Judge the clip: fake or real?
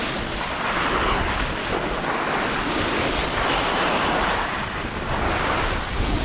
real